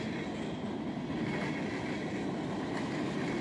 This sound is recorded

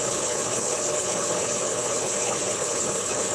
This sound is remade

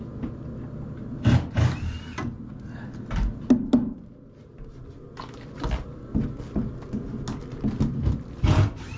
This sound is recorded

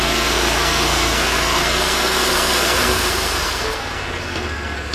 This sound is remade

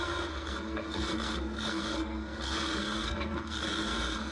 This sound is remade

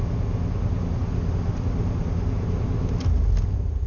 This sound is recorded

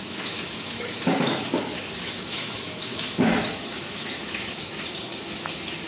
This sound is remade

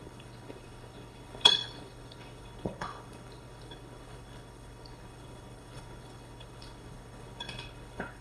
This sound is remade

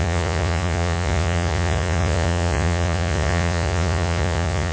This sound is remade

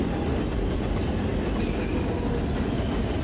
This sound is recorded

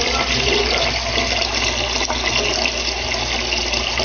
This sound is recorded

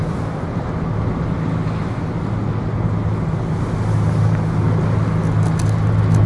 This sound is recorded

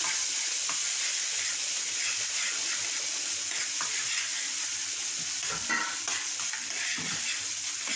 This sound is recorded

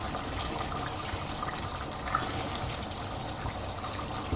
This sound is recorded